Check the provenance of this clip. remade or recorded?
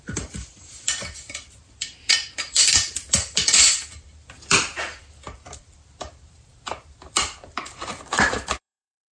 remade